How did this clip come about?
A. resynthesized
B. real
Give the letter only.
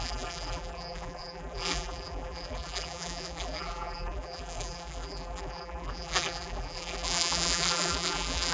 A